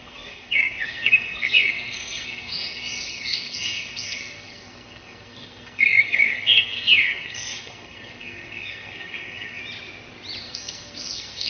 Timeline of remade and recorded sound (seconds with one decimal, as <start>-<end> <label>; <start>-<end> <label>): 0.0-9.6 remade; 9.6-10.4 recorded; 10.4-11.5 remade